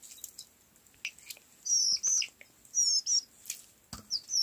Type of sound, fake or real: real